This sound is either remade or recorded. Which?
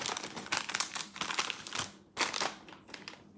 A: recorded